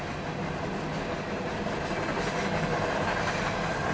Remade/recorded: recorded